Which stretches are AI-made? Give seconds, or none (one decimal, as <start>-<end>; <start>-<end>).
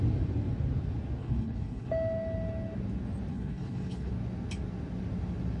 1.2-1.9; 3.3-4.1